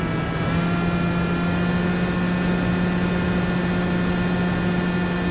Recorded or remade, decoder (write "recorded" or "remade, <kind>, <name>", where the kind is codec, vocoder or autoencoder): recorded